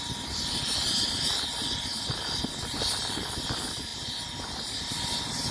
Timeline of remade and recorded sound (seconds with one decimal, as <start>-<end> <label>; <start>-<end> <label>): 0.0-5.5 recorded